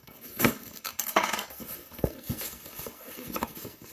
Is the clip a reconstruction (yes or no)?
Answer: yes